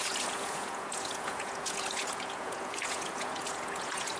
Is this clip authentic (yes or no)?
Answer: no